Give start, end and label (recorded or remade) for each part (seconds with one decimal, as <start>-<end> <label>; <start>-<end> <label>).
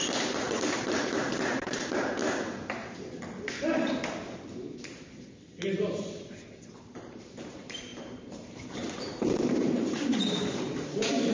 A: 0.0-2.2 remade; 2.2-6.8 recorded; 6.8-11.3 remade